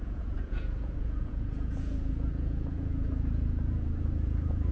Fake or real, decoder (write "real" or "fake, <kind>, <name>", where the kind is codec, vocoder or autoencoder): fake, vocoder, Vocos